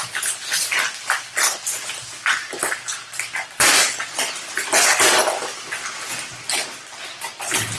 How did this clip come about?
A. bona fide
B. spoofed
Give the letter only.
A